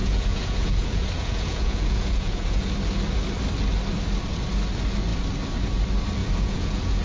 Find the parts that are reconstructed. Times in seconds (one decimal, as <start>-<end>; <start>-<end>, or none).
0.0-2.7; 6.2-7.0